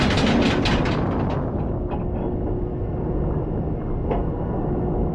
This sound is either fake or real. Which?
real